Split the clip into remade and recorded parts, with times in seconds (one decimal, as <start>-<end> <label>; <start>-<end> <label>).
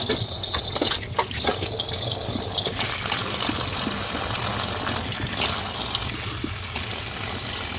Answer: 0.0-7.8 recorded